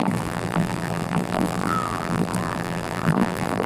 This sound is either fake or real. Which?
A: fake